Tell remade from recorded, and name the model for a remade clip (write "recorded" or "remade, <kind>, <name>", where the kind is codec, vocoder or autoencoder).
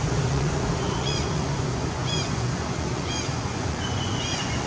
remade, vocoder, Vocos